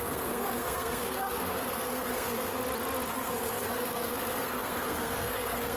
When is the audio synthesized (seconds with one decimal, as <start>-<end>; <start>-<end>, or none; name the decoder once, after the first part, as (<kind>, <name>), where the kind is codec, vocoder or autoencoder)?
0.0-2.6 (codec, SNAC); 3.1-5.8